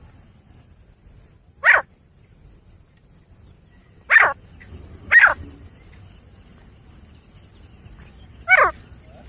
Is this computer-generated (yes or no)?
no